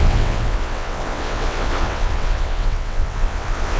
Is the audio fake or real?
fake